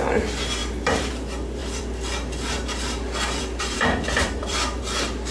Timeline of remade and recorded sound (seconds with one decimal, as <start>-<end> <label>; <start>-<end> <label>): 0.0-0.6 recorded; 0.6-1.1 remade; 1.1-1.6 recorded; 1.6-4.8 remade; 4.8-5.3 recorded